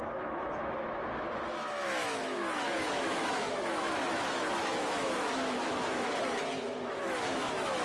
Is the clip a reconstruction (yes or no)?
yes